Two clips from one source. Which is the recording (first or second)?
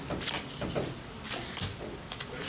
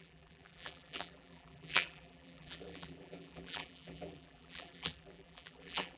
first